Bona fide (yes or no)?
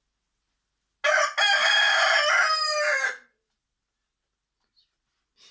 yes